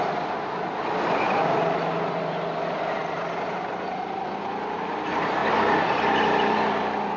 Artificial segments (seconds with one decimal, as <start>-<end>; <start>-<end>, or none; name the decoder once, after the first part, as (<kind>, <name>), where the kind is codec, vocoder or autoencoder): none